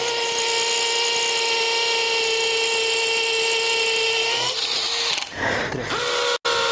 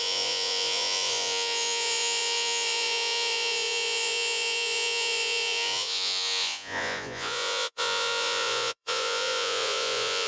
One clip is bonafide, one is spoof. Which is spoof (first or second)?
second